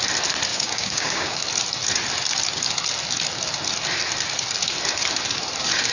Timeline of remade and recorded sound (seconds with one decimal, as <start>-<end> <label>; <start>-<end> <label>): 0.0-0.5 recorded; 0.5-1.4 remade; 1.4-5.9 recorded